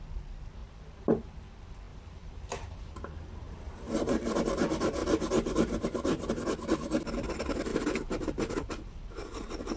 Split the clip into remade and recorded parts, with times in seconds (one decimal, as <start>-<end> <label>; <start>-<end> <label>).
0.0-1.9 recorded; 1.9-4.4 remade; 4.4-5.0 recorded; 5.0-6.3 remade; 6.3-7.7 recorded; 7.7-8.5 remade; 8.5-9.8 recorded